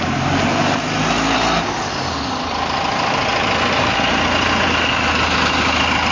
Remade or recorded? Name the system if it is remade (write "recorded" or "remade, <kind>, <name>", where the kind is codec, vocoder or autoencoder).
recorded